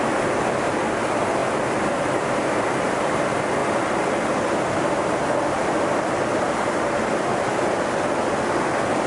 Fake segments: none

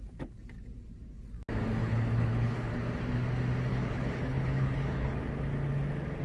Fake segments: 1.8-2.7 (codec, HILCodec); 3.7-5.1

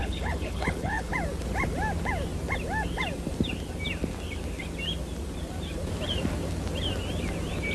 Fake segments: 0.0-1.1 (codec, HILCodec)